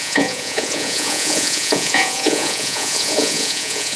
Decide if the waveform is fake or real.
fake